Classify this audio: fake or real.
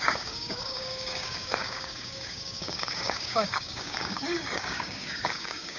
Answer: fake